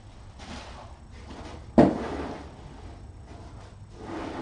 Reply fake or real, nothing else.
real